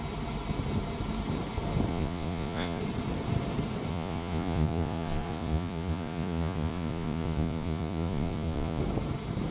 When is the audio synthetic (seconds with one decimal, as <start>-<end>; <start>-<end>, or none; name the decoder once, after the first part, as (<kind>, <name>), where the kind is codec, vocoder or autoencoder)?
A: 1.9-2.8 (vocoder, Vocos); 3.9-8.8